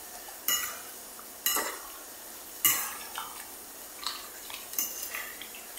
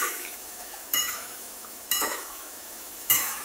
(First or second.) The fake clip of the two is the second